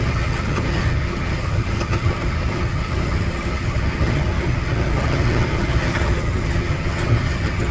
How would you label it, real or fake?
fake